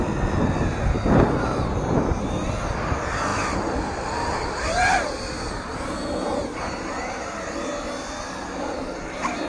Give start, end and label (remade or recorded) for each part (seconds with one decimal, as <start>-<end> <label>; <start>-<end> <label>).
0.0-9.5 recorded